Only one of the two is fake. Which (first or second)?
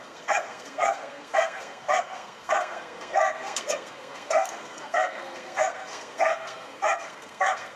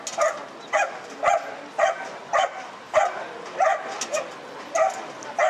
first